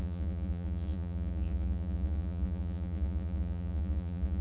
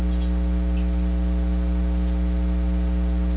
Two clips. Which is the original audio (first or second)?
second